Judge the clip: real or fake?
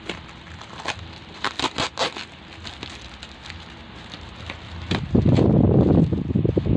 real